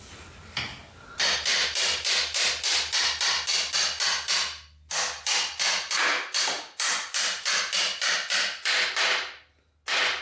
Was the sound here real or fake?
real